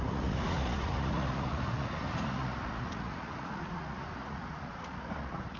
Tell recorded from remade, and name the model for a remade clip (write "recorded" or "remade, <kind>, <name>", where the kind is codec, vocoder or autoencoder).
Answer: remade, vocoder, Vocos